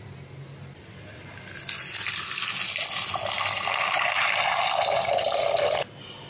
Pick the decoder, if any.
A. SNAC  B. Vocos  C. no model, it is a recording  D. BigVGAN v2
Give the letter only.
C